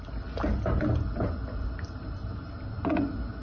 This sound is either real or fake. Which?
real